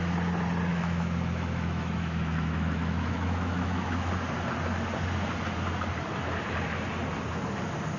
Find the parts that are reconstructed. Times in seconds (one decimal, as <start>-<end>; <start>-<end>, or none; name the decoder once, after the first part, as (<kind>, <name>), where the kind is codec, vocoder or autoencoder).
0.7-4.1 (autoencoder, DAC-VAE)